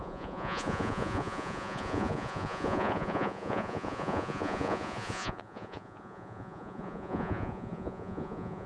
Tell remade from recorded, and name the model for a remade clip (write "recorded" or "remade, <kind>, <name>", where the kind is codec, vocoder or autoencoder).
remade, vocoder, Vocos